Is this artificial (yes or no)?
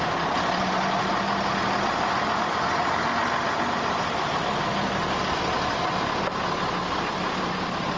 no